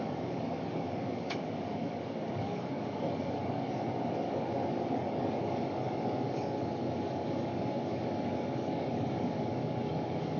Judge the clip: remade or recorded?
remade